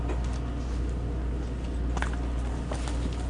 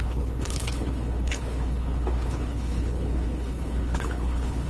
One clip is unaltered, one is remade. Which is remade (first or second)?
second